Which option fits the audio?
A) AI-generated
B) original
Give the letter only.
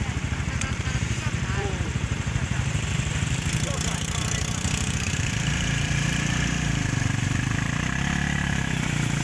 A